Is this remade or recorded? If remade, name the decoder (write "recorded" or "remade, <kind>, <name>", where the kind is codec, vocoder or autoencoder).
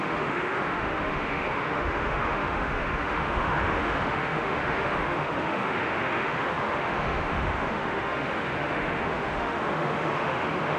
remade, autoencoder, DAC-VAE